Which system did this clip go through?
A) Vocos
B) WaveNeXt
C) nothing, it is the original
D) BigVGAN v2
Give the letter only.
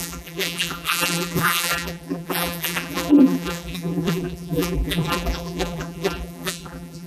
D